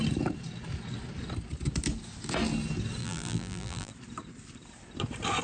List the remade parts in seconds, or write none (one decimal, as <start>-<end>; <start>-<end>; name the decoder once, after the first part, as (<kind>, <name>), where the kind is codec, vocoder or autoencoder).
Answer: 3.0-3.9 (vocoder, BigVGAN v2)